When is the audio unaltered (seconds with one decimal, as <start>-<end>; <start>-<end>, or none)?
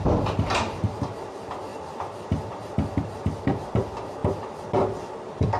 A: 0.0-5.6